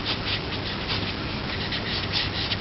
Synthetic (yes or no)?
no